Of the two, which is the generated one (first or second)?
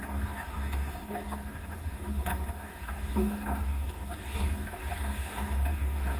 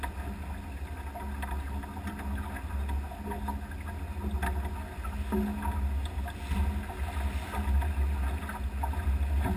first